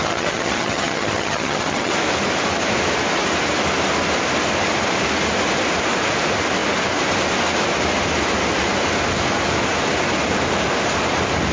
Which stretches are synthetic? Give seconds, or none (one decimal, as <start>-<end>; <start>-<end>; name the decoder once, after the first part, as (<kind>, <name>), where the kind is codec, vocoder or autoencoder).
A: 0.0-1.9 (vocoder, HiFi-GAN)